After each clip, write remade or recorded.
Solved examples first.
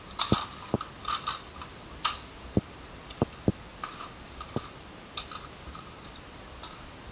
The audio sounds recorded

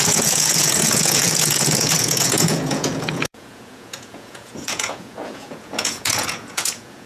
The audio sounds remade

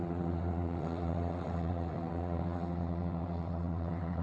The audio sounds remade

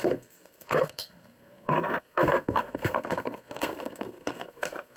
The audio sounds remade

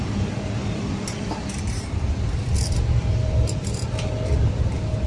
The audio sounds remade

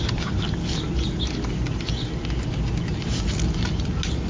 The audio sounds recorded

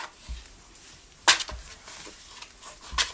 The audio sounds recorded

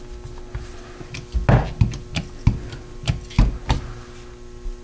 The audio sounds recorded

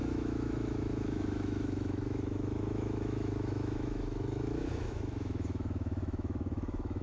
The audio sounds remade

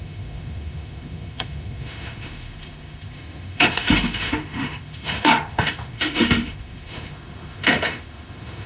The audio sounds remade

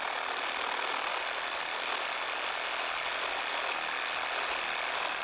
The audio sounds recorded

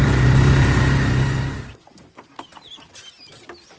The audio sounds recorded